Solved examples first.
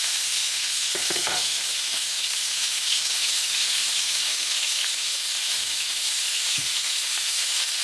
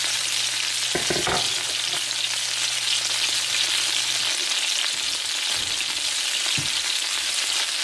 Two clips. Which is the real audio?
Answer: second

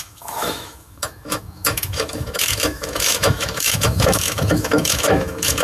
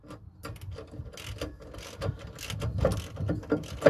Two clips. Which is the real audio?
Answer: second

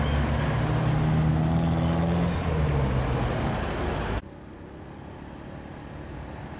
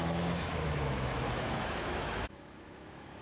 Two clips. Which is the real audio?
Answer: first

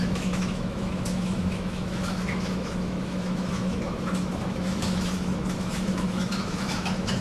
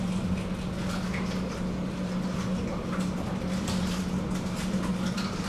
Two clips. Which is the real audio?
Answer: second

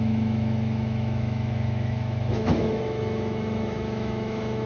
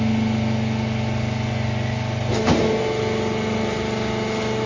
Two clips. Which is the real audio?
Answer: second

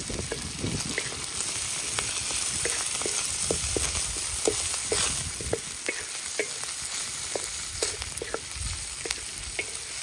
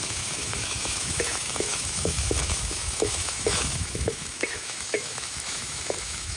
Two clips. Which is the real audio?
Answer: first